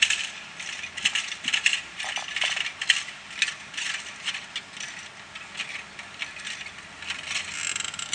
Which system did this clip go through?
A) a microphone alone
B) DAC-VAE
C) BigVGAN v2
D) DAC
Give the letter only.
A